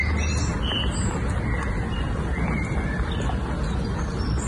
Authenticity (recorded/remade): recorded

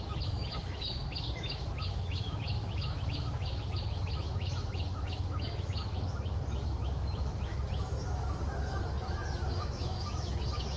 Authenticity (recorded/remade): remade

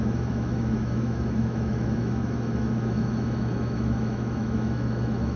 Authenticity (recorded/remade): remade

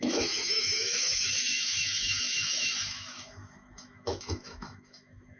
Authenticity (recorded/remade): remade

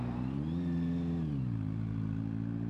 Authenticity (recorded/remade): recorded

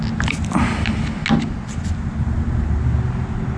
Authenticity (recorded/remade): recorded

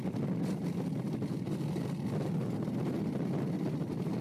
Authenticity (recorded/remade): recorded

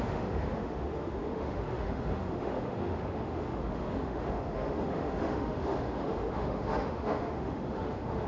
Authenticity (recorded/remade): remade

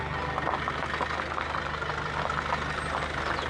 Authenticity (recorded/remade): recorded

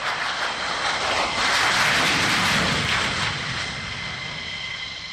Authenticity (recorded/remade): recorded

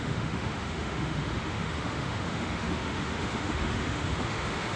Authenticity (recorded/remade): remade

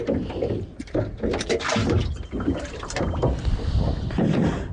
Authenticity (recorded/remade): recorded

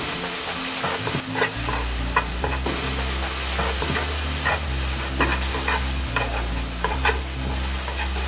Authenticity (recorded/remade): recorded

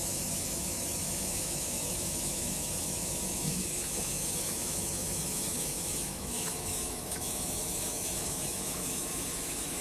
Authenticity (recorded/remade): remade